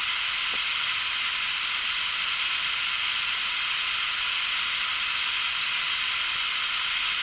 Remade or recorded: recorded